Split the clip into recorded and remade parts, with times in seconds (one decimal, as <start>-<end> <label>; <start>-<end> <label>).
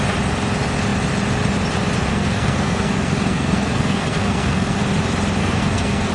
0.0-2.1 recorded; 2.1-4.8 remade; 4.8-5.4 recorded; 5.4-6.1 remade